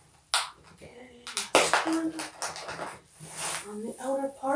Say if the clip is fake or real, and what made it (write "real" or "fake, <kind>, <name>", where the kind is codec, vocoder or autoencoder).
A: real